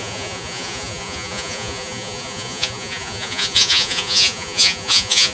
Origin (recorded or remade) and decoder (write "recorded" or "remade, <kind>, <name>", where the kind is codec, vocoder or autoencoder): remade, vocoder, Vocos